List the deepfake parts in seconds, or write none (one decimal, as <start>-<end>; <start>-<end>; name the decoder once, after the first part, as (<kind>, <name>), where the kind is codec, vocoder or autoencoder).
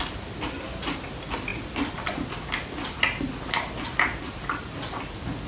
none